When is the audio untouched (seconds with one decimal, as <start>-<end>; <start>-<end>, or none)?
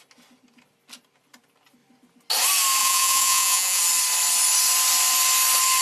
0.0-2.8; 3.8-5.8